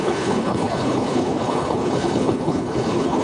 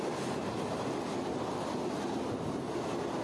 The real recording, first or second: second